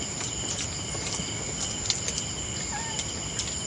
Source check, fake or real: real